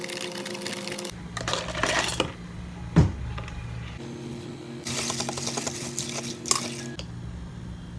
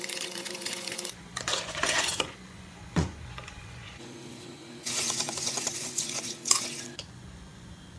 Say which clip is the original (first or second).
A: first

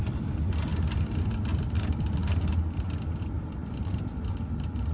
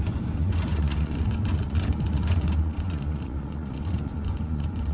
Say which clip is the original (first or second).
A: first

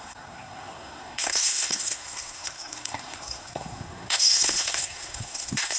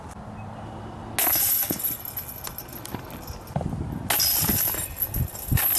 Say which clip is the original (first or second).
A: second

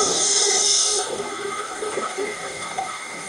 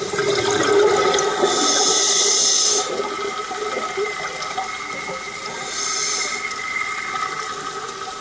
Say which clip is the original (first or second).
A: second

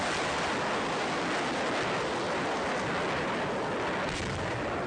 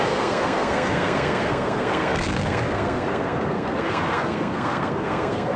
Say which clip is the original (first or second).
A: first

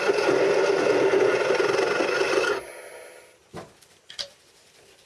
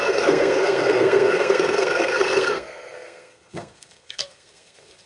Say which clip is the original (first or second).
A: first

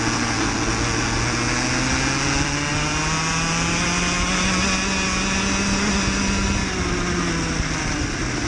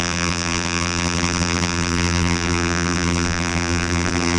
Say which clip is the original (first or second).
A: first